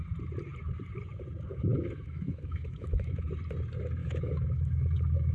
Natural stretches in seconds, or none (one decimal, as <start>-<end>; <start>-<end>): 0.0-1.5; 3.3-4.0